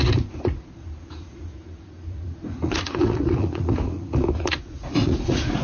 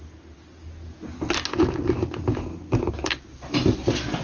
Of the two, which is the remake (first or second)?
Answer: first